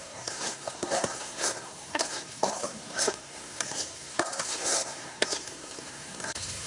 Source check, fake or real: fake